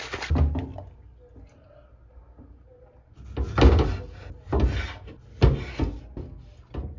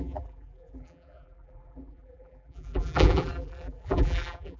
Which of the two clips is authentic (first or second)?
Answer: first